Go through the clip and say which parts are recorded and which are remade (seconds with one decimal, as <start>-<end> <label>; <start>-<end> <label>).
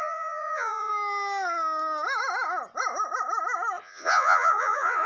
0.0-0.9 remade; 0.9-3.8 recorded; 3.8-5.1 remade